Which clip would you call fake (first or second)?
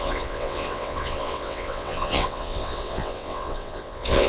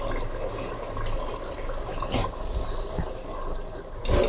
first